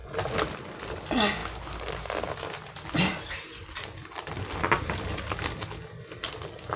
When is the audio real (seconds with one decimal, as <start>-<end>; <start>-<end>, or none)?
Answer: 0.0-6.8